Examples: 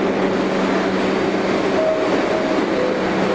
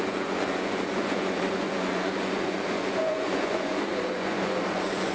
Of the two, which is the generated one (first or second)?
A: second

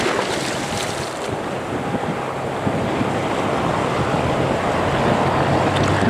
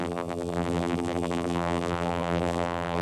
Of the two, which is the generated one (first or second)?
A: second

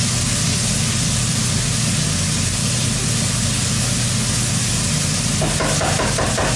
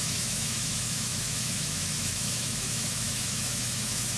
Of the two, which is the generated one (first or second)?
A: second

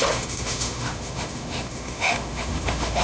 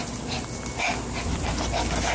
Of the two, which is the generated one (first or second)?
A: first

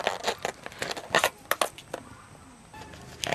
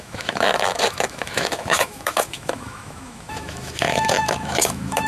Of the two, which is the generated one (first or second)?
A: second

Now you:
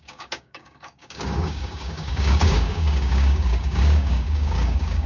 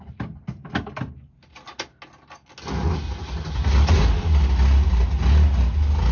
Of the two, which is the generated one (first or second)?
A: first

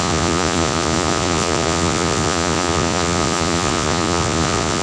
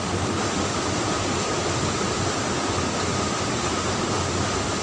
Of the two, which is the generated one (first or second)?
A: first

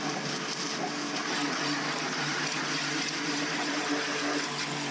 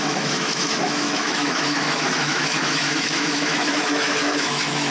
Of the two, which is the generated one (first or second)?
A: second